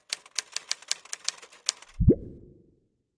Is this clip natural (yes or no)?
yes